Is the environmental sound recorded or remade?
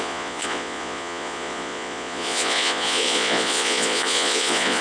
remade